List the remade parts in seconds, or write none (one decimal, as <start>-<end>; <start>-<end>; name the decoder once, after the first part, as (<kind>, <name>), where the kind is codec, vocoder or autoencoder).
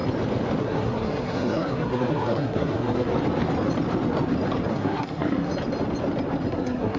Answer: 0.6-3.1 (codec, SNAC); 4.7-5.5; 6.5-7.0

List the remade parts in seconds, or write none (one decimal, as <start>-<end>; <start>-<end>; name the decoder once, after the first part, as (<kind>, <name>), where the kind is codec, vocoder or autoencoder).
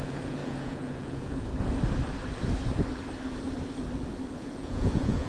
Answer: 0.0-1.5 (vocoder, Vocos); 4.3-5.3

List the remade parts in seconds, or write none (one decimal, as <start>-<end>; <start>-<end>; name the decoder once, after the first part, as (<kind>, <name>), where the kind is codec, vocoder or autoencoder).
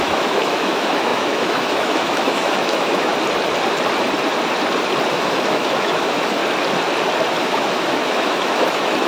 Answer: 0.0-3.1 (autoencoder, DAC-VAE); 5.1-6.4; 7.4-9.1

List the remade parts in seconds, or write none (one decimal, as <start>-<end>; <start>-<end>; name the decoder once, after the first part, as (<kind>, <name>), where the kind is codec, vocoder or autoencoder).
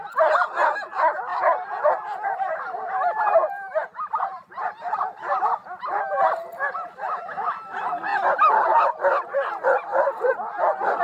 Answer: 1.3-3.2 (vocoder, BigVGAN v2); 4.3-5.8